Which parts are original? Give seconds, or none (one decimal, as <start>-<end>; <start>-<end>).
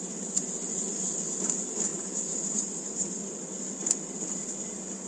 0.0-5.1